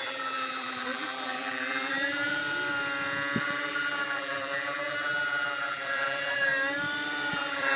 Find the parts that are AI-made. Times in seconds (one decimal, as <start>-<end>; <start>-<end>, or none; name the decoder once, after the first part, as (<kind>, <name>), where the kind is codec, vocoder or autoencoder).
0.0-2.4 (vocoder, BigVGAN v2); 3.4-6.5; 7.3-7.8

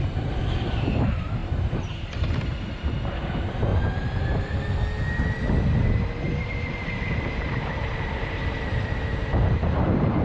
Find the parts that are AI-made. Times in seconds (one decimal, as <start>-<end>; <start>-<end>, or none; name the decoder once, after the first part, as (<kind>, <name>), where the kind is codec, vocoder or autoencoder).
0.0-3.7 (vocoder, BigVGAN v2); 7.1-10.2

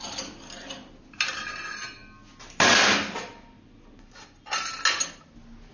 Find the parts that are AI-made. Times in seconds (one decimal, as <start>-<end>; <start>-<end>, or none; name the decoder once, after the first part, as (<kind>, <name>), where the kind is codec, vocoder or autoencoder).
none